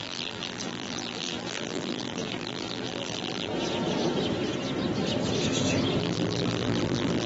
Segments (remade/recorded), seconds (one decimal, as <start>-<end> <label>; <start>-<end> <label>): 0.0-3.5 remade; 3.5-6.0 recorded; 6.0-7.3 remade